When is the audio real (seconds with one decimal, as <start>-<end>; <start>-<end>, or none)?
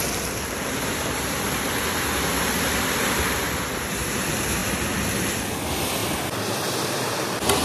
0.0-7.6